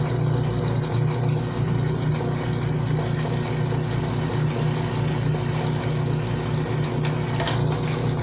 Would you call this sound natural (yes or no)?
yes